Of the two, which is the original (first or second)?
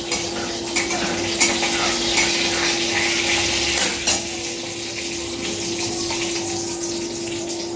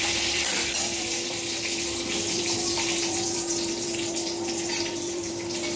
first